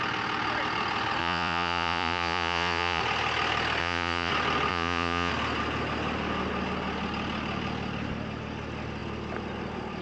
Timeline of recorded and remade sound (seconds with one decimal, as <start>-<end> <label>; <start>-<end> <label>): 0.0-1.2 recorded; 1.2-3.0 remade; 3.0-3.8 recorded; 3.8-4.3 remade; 4.3-4.7 recorded; 4.7-5.3 remade; 5.3-10.0 recorded